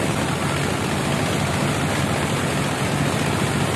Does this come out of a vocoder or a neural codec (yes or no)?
no